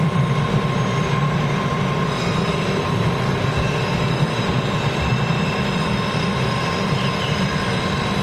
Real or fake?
real